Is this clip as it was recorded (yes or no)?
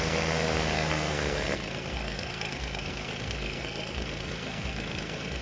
no